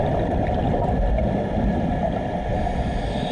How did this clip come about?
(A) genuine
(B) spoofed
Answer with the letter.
A